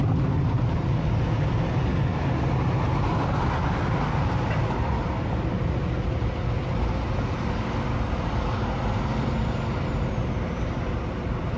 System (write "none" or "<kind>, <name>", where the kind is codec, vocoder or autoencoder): none